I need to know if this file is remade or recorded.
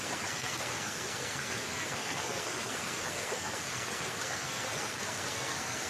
remade